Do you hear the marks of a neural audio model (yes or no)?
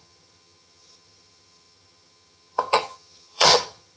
yes